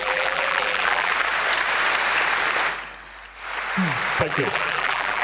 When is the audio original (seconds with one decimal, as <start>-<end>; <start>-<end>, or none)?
1.1-4.2